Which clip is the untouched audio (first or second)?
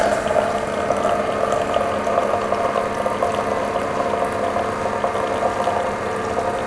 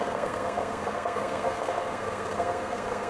first